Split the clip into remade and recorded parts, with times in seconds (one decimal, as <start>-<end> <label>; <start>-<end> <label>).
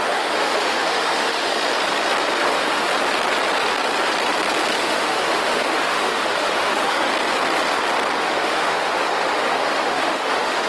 0.0-1.5 remade; 1.5-2.5 recorded; 2.5-2.9 remade; 2.9-4.8 recorded; 4.8-7.1 remade; 7.1-8.2 recorded; 8.2-10.7 remade